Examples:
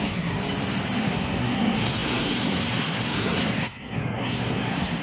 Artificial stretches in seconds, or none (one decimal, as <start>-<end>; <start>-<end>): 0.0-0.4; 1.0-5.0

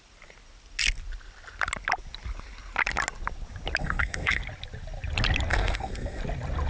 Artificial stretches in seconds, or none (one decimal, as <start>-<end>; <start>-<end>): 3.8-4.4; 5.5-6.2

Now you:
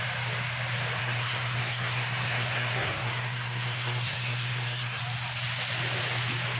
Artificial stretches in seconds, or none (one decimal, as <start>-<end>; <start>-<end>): 1.0-5.0

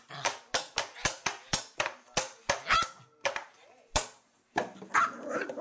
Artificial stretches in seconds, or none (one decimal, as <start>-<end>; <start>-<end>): none

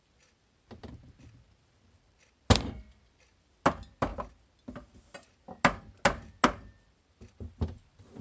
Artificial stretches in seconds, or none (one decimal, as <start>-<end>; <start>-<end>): none